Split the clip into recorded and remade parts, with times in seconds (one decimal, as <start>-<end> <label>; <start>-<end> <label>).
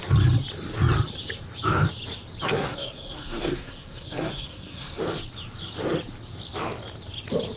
0.0-2.5 recorded; 2.5-5.0 remade; 5.0-7.6 recorded